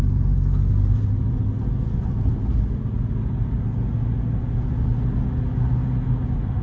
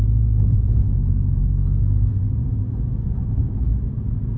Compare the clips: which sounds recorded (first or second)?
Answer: first